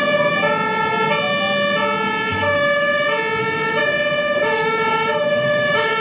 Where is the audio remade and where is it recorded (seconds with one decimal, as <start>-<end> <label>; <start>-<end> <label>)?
0.0-2.3 recorded; 2.3-3.0 remade; 3.0-3.4 recorded; 3.4-6.0 remade